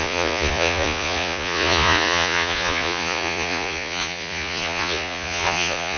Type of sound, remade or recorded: remade